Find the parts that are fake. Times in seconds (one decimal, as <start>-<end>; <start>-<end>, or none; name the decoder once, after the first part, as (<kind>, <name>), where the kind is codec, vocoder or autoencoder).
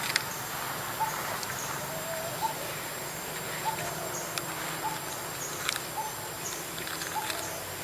1.4-4.3 (vocoder, BigVGAN v2)